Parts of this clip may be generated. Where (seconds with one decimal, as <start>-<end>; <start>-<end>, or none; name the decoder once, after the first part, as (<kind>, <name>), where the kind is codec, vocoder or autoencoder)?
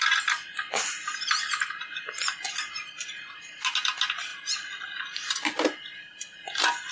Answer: none